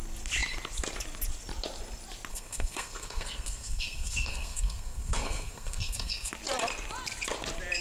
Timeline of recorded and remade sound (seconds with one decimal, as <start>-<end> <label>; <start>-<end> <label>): 0.0-2.3 recorded; 2.3-6.3 remade; 6.3-7.8 recorded